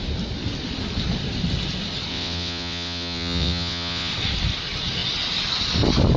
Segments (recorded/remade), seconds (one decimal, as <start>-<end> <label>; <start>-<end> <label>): 0.0-2.1 recorded; 2.1-4.1 remade; 4.1-6.2 recorded